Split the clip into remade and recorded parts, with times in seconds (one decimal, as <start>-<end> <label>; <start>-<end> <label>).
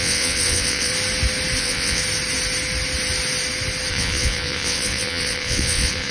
0.0-0.9 remade; 0.9-1.6 recorded; 1.6-2.0 remade; 2.0-3.9 recorded; 3.9-6.1 remade